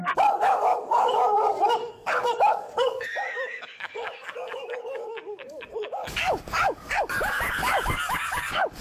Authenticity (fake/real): fake